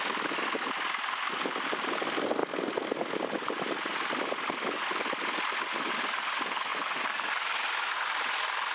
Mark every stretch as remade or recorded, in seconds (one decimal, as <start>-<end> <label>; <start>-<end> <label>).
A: 0.0-8.7 recorded